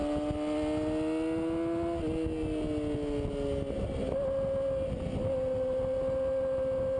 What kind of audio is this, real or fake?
real